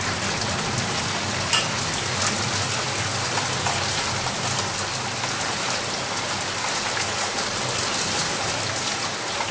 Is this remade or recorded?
recorded